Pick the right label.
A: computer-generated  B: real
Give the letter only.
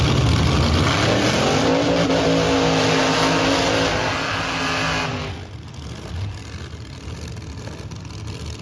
B